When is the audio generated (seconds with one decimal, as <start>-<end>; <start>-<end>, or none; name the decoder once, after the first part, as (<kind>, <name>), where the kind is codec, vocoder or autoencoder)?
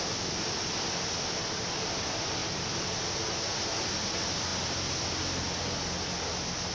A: none